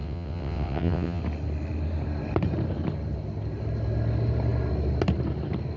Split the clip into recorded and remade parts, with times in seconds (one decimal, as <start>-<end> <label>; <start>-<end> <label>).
0.0-1.2 remade; 1.2-5.8 recorded